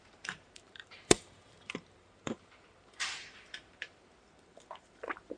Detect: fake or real fake